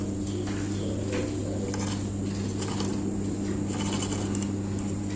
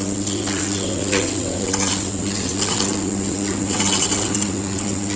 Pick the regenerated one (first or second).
second